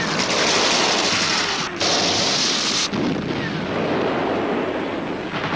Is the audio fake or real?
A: real